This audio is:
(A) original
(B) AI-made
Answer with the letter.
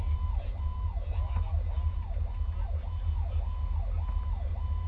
A